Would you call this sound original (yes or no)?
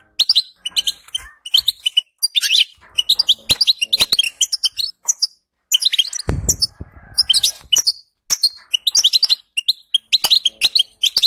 yes